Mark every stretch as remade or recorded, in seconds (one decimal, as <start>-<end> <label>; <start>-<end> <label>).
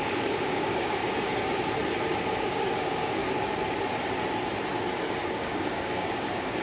0.0-1.0 remade; 1.0-2.4 recorded; 2.4-3.2 remade; 3.2-5.3 recorded; 5.3-6.6 remade